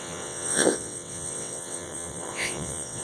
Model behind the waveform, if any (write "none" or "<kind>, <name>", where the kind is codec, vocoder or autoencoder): vocoder, WaveNeXt